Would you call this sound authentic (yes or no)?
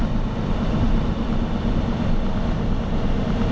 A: yes